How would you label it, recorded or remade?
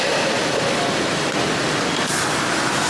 recorded